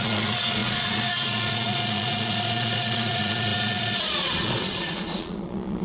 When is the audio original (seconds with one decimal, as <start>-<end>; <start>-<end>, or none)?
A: none